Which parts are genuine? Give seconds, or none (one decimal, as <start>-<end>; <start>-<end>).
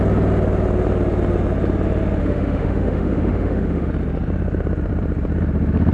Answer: 0.0-2.2; 3.9-5.9